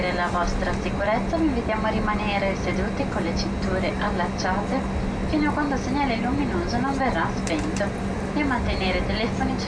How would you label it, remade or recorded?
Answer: recorded